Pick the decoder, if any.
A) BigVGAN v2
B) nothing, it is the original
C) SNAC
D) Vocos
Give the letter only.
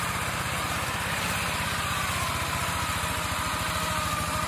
B